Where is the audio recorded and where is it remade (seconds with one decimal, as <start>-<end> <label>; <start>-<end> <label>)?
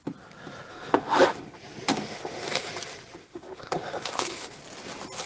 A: 0.0-0.7 recorded; 0.7-1.5 remade; 1.5-1.9 recorded; 1.9-2.7 remade; 2.7-3.2 recorded; 3.2-4.6 remade; 4.6-5.3 recorded